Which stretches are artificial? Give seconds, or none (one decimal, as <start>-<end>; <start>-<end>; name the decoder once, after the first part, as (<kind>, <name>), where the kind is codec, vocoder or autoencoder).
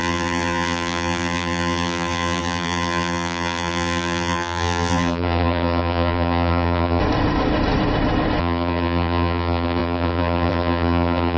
0.0-7.0 (vocoder, BigVGAN v2); 8.4-11.4